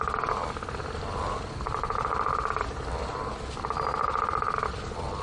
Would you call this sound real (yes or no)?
yes